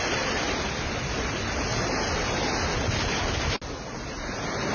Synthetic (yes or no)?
no